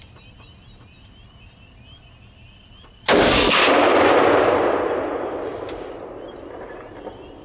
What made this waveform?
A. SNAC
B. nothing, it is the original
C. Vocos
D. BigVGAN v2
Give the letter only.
B